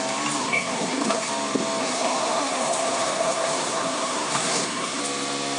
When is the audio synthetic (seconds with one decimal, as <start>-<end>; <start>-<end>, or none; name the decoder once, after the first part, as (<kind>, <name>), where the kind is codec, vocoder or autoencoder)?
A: 0.4-1.3 (codec, SNAC); 1.8-5.0